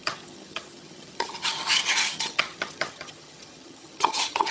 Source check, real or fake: fake